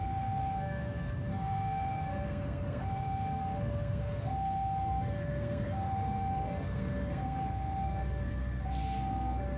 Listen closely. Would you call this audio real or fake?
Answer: fake